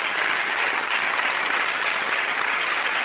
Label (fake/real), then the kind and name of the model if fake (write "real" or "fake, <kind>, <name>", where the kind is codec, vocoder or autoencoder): fake, vocoder, HiFi-GAN